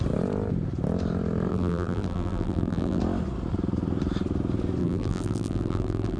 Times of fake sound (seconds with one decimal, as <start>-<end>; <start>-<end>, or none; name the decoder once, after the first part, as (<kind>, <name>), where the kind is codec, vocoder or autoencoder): 1.5-3.0 (vocoder, BigVGAN v2); 4.8-6.2

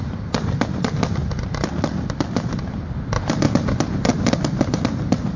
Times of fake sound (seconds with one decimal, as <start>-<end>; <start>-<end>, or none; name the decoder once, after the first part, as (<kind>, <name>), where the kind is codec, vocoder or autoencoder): 0.0-1.2 (vocoder, BigVGAN v2); 3.6-5.4

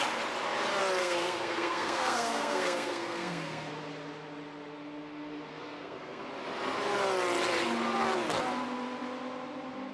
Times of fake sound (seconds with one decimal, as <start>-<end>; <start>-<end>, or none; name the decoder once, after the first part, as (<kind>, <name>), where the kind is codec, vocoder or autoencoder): 1.0-3.7 (codec, SNAC); 5.5-6.2